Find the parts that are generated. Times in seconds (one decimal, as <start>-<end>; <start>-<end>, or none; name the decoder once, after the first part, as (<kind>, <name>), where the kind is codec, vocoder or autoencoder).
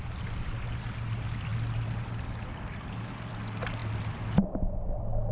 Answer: none